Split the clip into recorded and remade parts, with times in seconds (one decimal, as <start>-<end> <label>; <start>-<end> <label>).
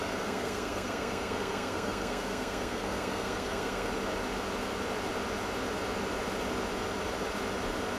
0.0-3.9 remade; 3.9-8.0 recorded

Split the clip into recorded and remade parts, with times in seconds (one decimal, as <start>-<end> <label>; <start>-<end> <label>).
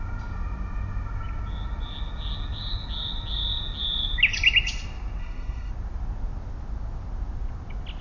0.0-5.2 recorded; 5.2-5.7 remade; 5.7-8.0 recorded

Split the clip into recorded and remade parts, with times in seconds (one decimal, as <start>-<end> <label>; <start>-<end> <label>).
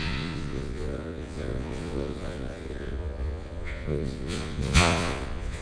0.0-5.6 remade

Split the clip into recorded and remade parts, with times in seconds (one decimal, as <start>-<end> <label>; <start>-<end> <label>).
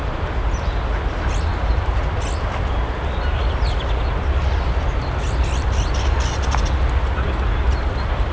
0.0-8.3 recorded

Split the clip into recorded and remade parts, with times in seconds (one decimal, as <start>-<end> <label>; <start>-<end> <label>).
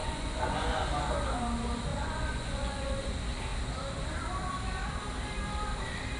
0.0-0.9 remade; 0.9-1.9 recorded; 1.9-3.1 remade; 3.1-6.2 recorded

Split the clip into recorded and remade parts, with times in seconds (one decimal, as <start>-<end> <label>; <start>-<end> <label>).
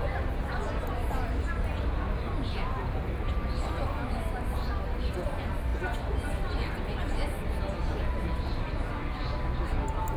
0.0-10.2 recorded